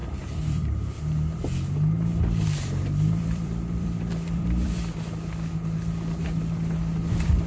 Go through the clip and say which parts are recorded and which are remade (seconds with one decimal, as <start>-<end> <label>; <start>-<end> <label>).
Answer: 0.0-1.0 remade; 1.0-2.1 recorded; 2.1-4.7 remade; 4.7-7.5 recorded